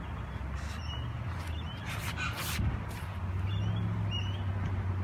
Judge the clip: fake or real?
real